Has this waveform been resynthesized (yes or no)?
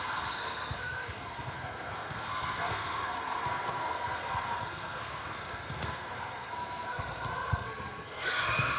yes